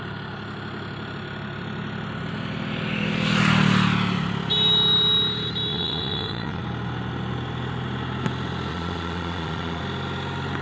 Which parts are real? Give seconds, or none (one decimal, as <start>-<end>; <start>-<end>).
0.0-5.7; 6.6-8.7; 9.8-10.6